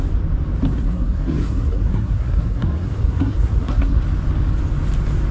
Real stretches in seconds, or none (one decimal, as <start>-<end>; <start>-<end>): 0.0-0.8; 4.0-5.3

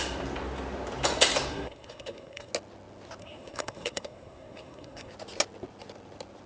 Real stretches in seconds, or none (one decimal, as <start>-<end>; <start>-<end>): 0.0-1.5; 2.5-3.2; 5.1-6.5

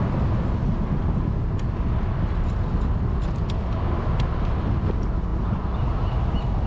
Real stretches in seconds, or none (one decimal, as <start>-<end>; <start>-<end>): 0.0-6.7

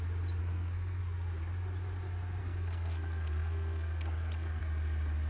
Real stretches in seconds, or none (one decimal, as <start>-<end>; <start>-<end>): 0.0-0.4; 1.0-2.4; 4.6-5.3

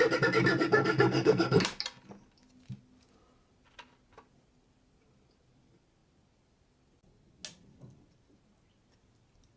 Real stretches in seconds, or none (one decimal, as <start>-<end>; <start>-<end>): 0.0-0.7; 1.6-9.6

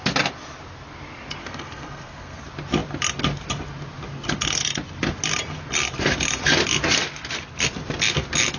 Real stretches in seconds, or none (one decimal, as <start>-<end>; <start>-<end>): 0.0-1.4; 2.4-8.6